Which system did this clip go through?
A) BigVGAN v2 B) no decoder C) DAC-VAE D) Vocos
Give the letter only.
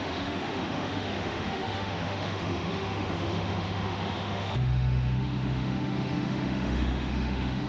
C